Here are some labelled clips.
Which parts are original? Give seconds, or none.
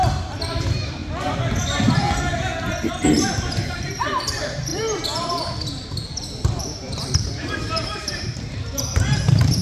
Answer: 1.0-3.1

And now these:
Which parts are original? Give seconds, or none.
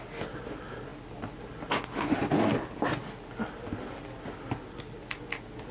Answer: 0.0-5.7